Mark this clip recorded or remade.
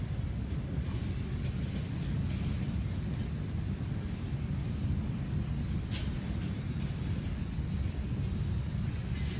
recorded